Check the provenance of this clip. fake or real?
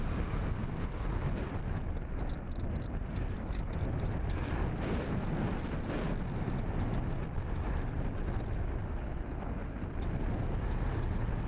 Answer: real